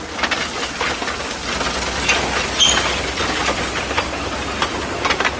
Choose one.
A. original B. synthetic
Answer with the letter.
A